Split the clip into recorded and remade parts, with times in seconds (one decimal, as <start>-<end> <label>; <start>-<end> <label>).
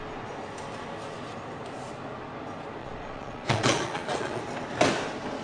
0.0-2.8 recorded; 2.8-4.4 remade; 4.4-5.4 recorded